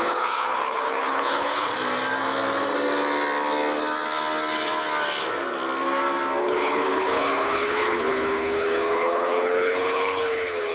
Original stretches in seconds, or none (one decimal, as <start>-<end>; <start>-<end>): 1.7-6.4